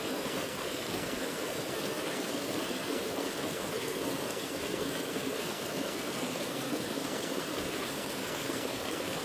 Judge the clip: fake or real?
fake